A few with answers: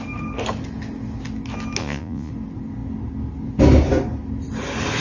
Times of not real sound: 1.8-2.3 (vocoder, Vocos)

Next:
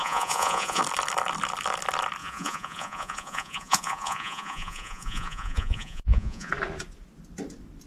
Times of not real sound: 0.0-0.8 (vocoder, Vocos); 2.2-6.5

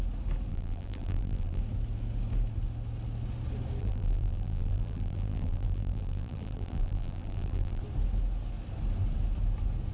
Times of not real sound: 0.5-1.6 (vocoder, BigVGAN v2); 3.8-7.8

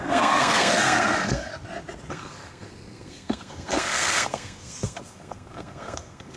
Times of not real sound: 0.0-1.5 (codec, SNAC); 2.1-6.4

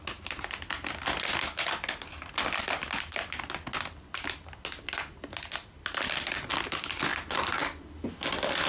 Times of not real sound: none

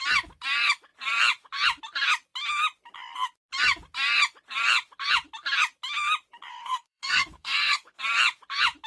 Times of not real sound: 6.5-8.0 (codec, SNAC)

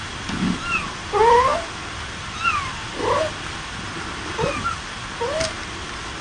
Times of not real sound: none

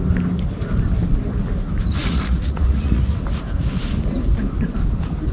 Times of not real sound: 2.0-3.0 (vocoder, Vocos)